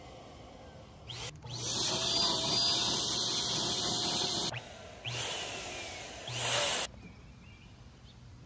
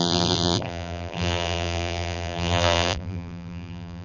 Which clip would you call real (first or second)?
first